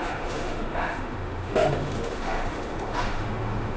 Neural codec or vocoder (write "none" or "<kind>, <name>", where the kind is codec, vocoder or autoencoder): autoencoder, DAC-VAE